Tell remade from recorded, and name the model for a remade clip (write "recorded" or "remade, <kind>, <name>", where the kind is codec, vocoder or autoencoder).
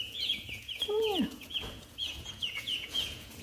remade, vocoder, Vocos